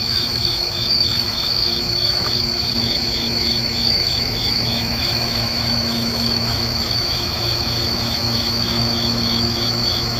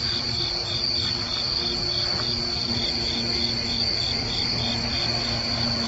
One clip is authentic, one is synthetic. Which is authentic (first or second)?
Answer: second